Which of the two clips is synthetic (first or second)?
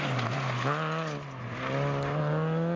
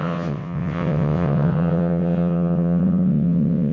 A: second